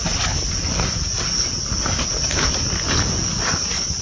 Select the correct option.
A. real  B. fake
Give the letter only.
A